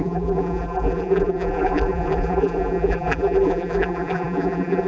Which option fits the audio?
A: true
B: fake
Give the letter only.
B